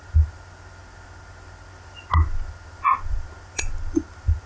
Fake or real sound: real